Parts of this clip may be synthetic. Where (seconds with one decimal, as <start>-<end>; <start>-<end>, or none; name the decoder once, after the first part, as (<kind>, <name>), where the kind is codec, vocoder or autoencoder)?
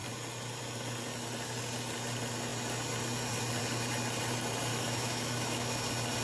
4.7-5.8 (autoencoder, DAC-VAE)